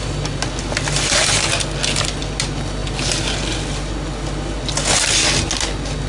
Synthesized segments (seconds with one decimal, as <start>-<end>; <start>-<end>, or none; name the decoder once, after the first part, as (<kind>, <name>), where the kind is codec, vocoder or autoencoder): none